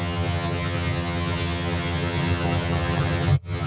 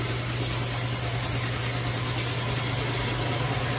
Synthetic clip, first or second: first